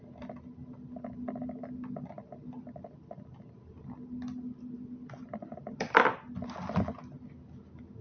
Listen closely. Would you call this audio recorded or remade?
remade